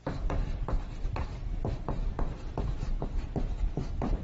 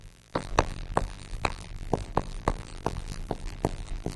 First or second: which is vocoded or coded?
second